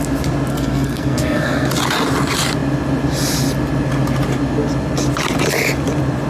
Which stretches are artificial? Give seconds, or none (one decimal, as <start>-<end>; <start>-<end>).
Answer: 0.5-1.7